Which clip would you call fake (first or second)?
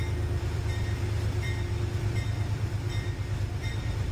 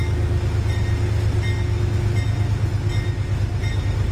first